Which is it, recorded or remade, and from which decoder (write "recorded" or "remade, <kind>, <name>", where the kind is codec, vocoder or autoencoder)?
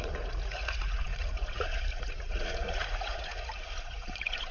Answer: remade, vocoder, Vocos